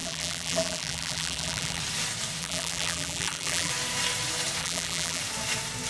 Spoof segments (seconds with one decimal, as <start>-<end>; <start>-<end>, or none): 0.0-1.8; 2.4-3.7; 4.6-5.2